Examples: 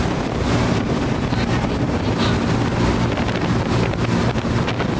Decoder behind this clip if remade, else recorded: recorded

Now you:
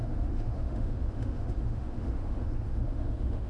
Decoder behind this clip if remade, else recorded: remade, autoencoder, DAC-VAE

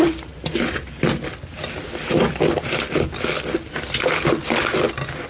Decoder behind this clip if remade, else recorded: recorded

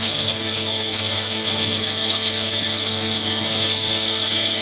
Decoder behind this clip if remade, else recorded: remade, codec, SNAC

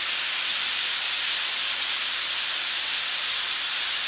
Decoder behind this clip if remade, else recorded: recorded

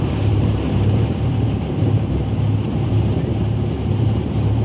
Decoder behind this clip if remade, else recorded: remade, vocoder, BigVGAN v2